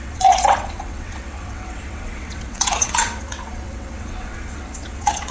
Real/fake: fake